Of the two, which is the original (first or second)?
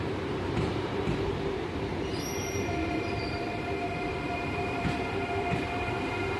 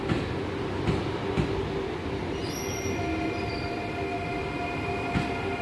second